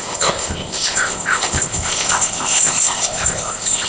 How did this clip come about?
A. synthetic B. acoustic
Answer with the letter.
A